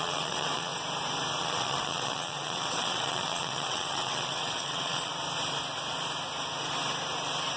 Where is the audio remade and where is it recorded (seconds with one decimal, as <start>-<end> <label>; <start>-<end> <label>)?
0.0-0.7 remade; 0.7-1.4 recorded; 1.4-5.1 remade; 5.1-7.6 recorded